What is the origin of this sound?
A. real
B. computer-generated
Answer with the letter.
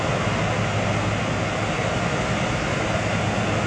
A